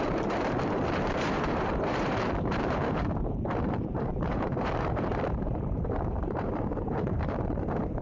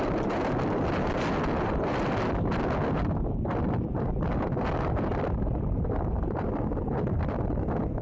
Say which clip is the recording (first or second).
second